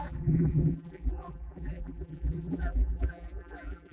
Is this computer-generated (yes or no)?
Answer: yes